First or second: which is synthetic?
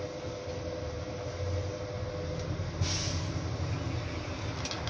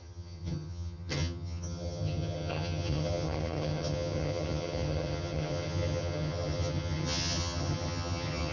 second